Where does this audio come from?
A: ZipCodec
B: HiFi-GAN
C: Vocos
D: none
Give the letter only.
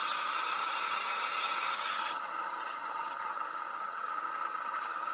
B